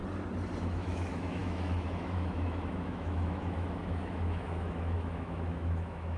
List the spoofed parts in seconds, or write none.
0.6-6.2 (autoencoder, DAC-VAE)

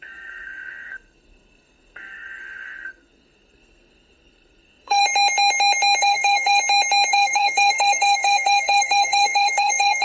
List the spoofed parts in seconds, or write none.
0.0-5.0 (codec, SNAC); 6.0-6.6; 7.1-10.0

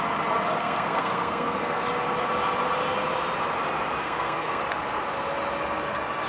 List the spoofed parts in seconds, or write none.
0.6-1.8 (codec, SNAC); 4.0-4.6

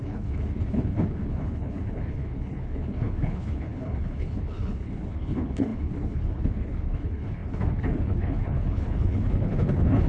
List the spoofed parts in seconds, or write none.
0.0-10.1 (codec, HILCodec)

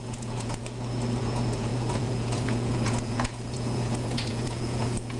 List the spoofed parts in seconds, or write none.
0.0-0.6 (vocoder, Vocos); 1.2-5.2

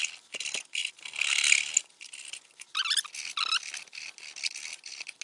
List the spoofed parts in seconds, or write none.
none